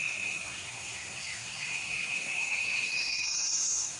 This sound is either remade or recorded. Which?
remade